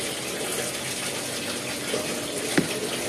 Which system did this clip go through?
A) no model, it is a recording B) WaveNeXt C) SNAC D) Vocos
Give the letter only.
A